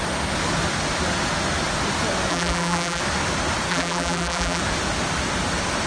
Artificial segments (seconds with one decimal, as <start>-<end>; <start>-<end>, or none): 2.3-3.0; 3.7-4.6